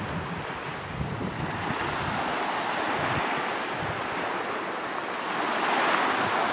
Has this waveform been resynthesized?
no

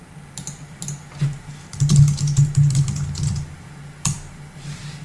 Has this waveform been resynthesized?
no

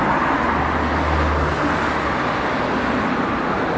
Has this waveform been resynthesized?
no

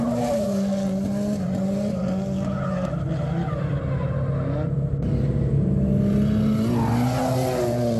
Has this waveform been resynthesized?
no